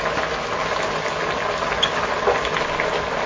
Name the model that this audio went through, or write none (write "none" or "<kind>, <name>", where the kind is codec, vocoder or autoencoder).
none